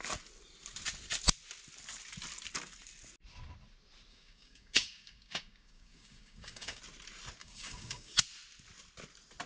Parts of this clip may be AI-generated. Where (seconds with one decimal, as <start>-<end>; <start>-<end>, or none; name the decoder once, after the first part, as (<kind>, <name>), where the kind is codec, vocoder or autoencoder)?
4.1-6.8 (codec, DAC); 7.4-8.2